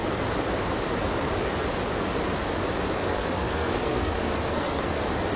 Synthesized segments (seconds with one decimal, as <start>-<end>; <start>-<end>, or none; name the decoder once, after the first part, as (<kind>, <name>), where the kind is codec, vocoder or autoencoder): 3.0-5.0 (codec, SNAC)